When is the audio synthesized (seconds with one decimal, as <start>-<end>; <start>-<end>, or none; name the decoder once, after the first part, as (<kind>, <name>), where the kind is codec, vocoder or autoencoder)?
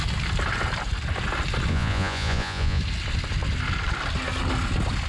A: 1.7-2.8 (vocoder, Vocos)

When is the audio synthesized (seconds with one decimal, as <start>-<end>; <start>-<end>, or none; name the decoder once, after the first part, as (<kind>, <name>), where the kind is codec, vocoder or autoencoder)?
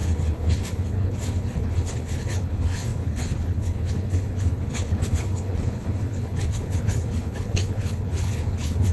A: 0.0-8.9 (codec, HILCodec)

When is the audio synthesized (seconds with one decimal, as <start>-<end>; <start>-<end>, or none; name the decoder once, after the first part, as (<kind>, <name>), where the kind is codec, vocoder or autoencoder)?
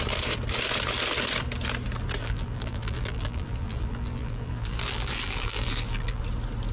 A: 2.2-6.2 (vocoder, BigVGAN v2)